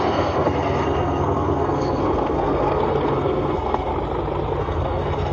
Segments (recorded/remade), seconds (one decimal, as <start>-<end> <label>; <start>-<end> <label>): 0.0-3.9 remade; 3.9-4.6 recorded; 4.6-5.3 remade